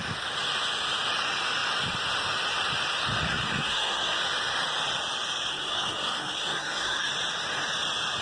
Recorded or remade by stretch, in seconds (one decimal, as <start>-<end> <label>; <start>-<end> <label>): 0.0-3.3 recorded; 3.3-4.2 remade; 4.2-5.5 recorded; 5.5-7.1 remade; 7.1-8.2 recorded